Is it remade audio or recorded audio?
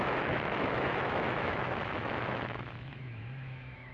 remade